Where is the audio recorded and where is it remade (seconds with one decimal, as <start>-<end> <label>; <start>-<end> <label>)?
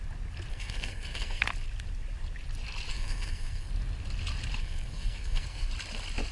0.0-0.5 recorded; 0.5-1.4 remade; 1.4-2.9 recorded; 2.9-3.7 remade; 3.7-4.6 recorded; 4.6-5.7 remade; 5.7-6.3 recorded